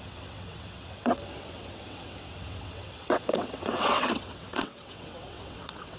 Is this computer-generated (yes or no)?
yes